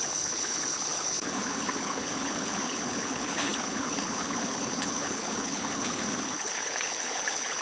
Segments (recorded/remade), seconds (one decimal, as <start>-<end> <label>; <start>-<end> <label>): 0.0-7.6 remade

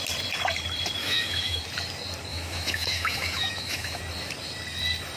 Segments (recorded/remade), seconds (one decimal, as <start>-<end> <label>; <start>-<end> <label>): 0.0-1.0 recorded; 1.0-1.6 remade; 1.6-2.3 recorded; 2.3-4.0 remade; 4.0-5.2 recorded

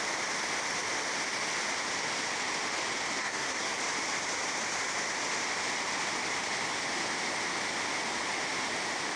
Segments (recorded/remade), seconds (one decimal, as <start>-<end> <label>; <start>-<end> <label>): 0.0-3.2 recorded; 3.2-3.8 remade; 3.8-9.2 recorded

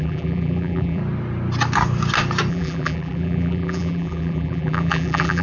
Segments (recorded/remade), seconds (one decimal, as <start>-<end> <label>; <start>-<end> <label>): 0.0-1.0 remade; 1.0-2.5 recorded; 2.5-5.4 remade

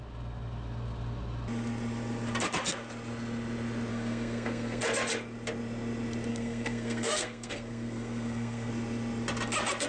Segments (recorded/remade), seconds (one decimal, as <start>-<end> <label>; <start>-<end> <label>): 0.0-3.9 recorded; 3.9-4.8 remade; 4.8-6.3 recorded; 6.3-8.7 remade; 8.7-9.9 recorded

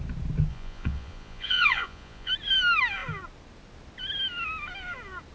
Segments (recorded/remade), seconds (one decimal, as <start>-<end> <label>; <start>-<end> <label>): 0.0-0.5 recorded; 0.5-2.3 remade; 2.3-5.3 recorded

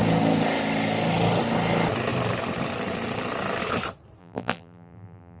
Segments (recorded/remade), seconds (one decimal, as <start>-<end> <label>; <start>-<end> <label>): 0.0-4.2 recorded; 4.2-5.4 remade